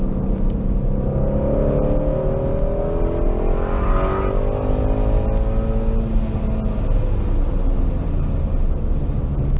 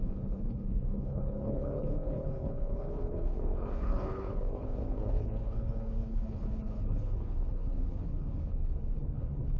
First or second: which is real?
first